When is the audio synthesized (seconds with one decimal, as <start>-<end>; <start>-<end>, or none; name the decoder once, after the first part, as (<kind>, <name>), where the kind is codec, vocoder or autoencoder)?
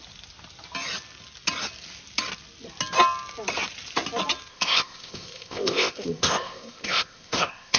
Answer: 4.5-7.8 (codec, ZipCodec)